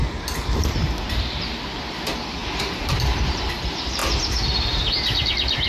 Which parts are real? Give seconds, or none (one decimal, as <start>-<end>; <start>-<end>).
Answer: 0.0-0.6; 4.0-5.7